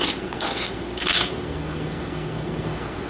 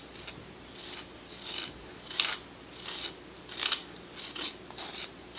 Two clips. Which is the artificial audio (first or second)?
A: first